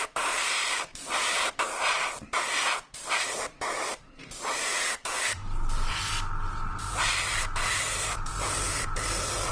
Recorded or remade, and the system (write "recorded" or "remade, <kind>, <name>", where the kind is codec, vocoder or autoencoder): remade, vocoder, BigVGAN v2